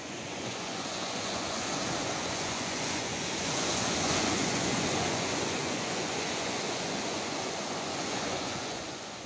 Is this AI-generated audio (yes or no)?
yes